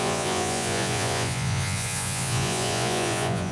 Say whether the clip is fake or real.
fake